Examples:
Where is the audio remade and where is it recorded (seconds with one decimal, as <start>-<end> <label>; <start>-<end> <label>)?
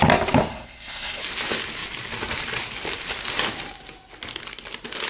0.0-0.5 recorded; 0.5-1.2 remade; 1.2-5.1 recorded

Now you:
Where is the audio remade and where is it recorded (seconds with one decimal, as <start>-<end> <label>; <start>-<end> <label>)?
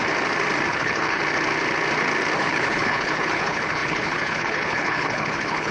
0.0-0.7 recorded; 0.7-1.2 remade; 1.2-2.4 recorded; 2.4-5.7 remade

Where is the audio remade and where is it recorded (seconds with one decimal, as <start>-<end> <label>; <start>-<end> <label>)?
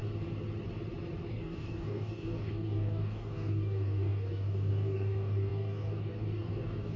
0.0-1.3 recorded; 1.3-7.0 remade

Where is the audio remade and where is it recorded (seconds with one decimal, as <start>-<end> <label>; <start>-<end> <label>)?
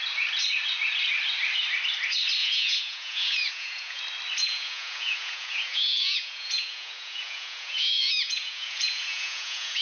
0.0-2.4 recorded; 2.4-4.0 remade; 4.0-4.4 recorded; 4.4-9.8 remade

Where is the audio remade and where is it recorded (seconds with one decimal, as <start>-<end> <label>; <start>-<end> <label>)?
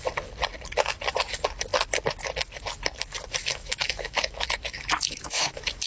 0.0-3.4 recorded; 3.4-5.9 remade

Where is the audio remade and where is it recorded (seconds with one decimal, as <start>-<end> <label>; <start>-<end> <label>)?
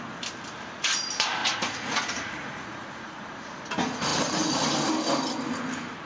0.0-1.4 recorded; 1.4-3.6 remade; 3.6-6.1 recorded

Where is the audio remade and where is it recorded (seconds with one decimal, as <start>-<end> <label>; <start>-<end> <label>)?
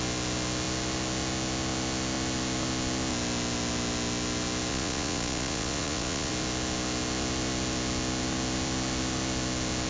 0.0-4.7 recorded; 4.7-6.3 remade; 6.3-9.9 recorded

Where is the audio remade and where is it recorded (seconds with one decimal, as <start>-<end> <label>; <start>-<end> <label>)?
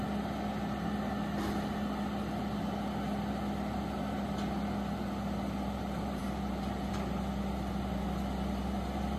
0.0-9.2 recorded